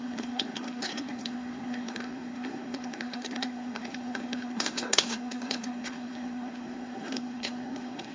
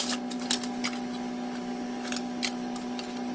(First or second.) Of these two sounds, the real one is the second